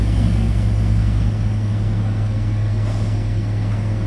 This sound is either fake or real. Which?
fake